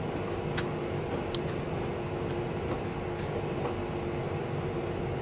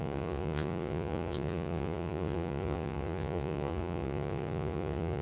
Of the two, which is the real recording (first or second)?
first